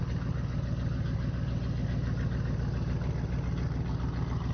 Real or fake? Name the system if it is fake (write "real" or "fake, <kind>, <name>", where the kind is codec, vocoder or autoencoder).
real